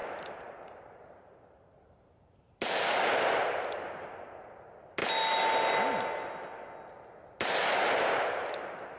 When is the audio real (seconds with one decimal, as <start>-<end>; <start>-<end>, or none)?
2.5-9.0